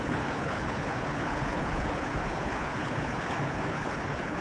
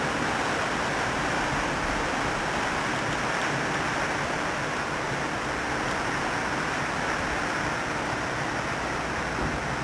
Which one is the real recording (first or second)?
second